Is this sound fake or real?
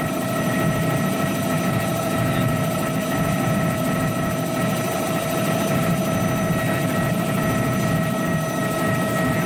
real